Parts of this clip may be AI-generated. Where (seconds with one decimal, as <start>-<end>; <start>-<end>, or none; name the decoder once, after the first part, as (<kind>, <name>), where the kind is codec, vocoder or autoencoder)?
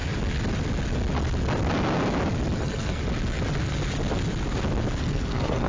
2.6-3.0 (codec, SNAC); 5.0-5.7